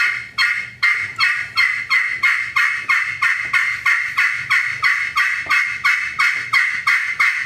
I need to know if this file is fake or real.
real